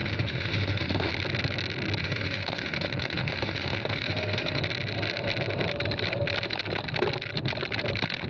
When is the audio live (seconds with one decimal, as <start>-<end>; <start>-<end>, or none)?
1.1-2.0; 4.6-8.3